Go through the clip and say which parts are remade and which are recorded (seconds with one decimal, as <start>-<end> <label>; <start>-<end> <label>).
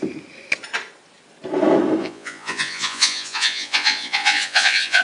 0.0-2.0 recorded; 2.0-5.0 remade